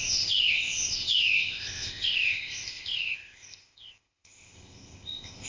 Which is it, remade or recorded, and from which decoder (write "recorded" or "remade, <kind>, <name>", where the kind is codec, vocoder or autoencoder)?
remade, codec, ZipCodec